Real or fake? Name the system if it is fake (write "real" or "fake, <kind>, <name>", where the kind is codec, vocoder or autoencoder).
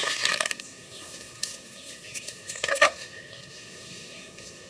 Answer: fake, codec, SNAC